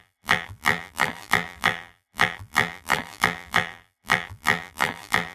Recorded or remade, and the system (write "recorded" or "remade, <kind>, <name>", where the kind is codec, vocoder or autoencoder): remade, vocoder, BigVGAN v2